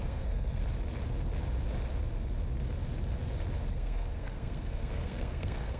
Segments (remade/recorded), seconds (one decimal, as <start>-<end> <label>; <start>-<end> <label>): 0.0-0.6 remade; 0.6-3.7 recorded; 3.7-5.8 remade